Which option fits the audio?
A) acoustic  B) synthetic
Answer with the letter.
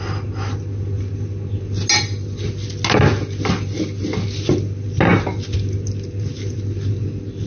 A